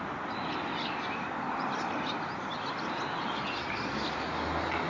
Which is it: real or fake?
real